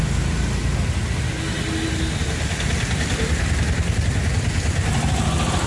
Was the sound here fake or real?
real